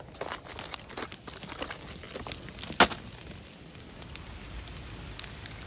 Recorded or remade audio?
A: recorded